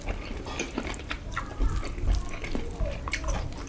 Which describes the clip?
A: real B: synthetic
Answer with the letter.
A